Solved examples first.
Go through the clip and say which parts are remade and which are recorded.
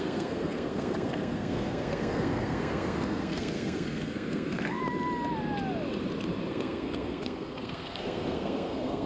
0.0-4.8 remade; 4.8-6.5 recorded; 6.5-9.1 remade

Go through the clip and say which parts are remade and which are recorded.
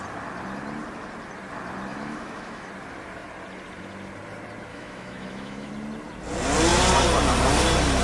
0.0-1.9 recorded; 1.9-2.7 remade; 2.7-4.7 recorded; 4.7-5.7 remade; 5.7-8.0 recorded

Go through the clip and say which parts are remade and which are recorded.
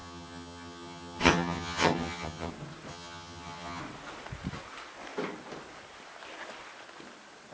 0.0-2.5 remade; 2.5-2.9 recorded; 2.9-3.8 remade; 3.8-7.5 recorded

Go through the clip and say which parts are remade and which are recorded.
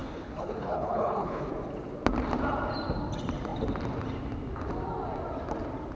0.0-1.5 remade; 1.5-5.9 recorded